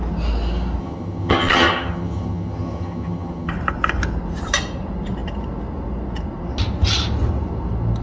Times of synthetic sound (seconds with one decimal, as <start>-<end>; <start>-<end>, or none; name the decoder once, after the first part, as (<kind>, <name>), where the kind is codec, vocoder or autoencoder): 0.8-3.5 (vocoder, HiFi-GAN)